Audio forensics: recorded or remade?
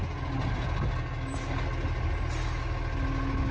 recorded